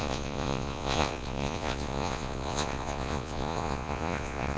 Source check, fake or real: fake